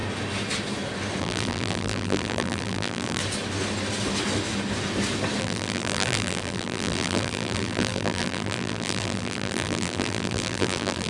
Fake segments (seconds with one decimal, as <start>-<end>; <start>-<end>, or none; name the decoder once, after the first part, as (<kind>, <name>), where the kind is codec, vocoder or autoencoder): 1.2-3.2 (vocoder, BigVGAN v2); 5.4-11.1